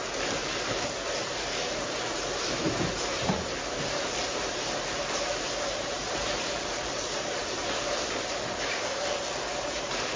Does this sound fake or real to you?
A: fake